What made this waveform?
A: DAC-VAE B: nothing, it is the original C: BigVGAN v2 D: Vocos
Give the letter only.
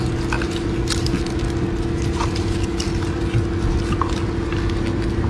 B